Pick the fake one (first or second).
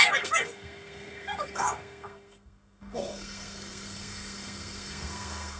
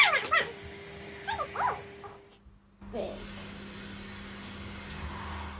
first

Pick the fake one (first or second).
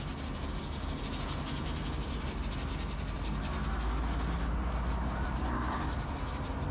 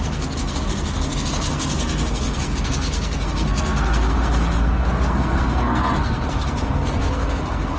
second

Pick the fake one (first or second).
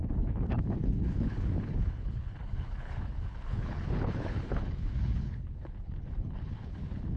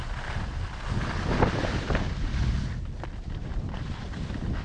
first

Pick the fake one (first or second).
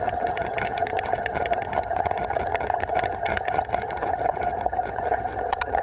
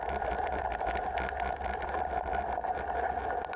first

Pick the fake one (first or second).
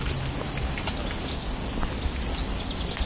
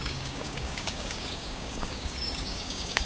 second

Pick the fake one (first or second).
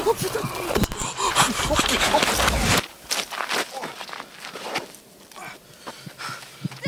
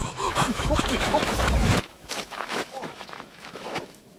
second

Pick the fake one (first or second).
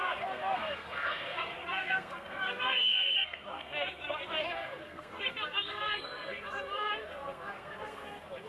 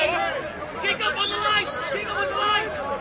first